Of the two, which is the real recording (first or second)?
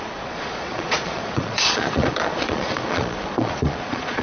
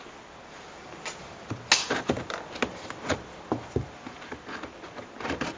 second